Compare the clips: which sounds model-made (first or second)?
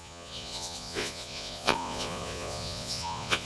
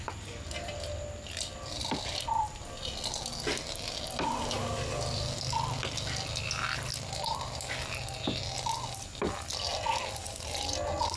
first